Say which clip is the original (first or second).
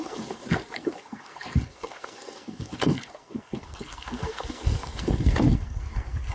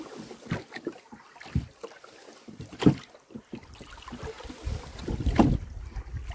second